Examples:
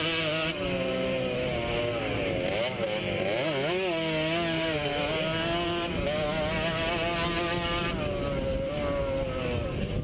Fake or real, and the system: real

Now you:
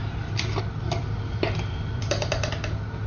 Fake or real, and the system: fake, vocoder, BigVGAN v2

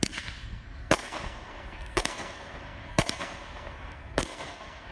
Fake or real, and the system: fake, codec, SNAC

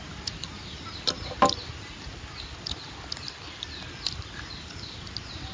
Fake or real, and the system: real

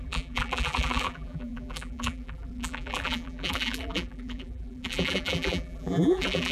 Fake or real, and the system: fake, vocoder, BigVGAN v2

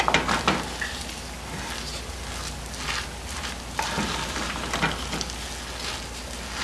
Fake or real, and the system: real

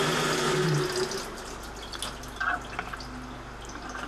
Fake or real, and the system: real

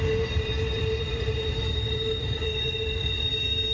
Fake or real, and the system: fake, vocoder, BigVGAN v2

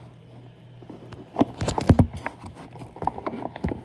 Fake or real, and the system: real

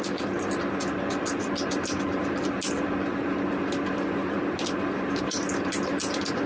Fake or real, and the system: real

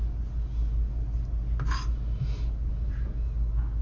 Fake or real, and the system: real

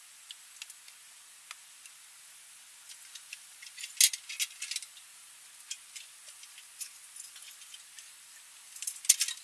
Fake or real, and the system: real